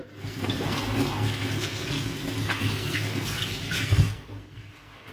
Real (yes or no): no